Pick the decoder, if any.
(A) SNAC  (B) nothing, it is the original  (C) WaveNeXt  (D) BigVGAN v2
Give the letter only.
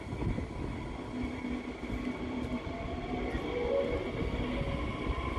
B